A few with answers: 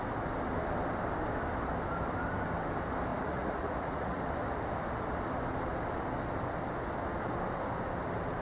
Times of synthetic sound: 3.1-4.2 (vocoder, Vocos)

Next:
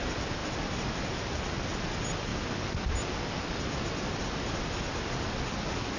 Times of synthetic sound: none

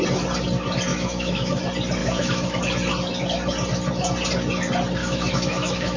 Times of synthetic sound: 0.9-1.6 (autoencoder, DAC-VAE); 2.0-2.6; 5.0-6.0

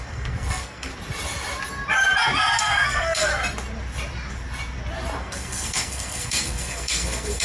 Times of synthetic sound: 0.0-0.9 (codec, SNAC); 2.6-3.3; 5.2-7.4